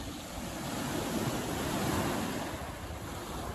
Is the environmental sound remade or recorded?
recorded